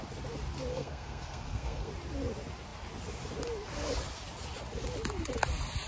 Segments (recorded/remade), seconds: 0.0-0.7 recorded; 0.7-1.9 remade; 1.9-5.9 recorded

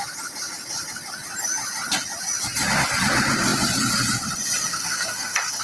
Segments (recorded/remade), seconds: 0.0-4.7 recorded; 4.7-5.6 remade

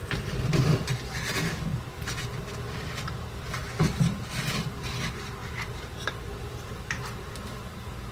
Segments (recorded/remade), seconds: 0.0-8.1 recorded

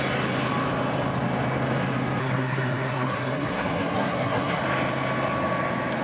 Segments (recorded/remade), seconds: 0.0-2.2 recorded; 2.2-4.6 remade; 4.6-6.0 recorded

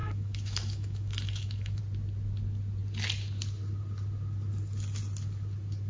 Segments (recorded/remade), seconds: 0.0-1.8 remade; 1.8-5.9 recorded